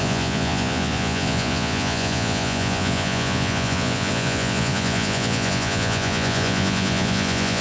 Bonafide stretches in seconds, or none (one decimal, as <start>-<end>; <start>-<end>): none